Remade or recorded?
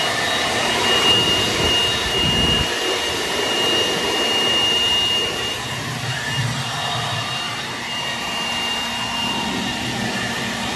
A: remade